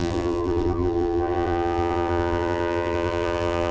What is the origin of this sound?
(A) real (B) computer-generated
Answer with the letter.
B